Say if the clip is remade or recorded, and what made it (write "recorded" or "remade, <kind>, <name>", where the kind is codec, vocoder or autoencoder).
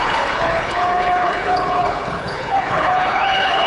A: remade, codec, HILCodec